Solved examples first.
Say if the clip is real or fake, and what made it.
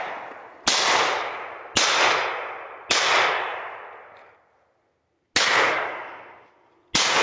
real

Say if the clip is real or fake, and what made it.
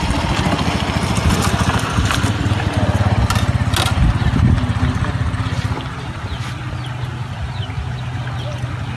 real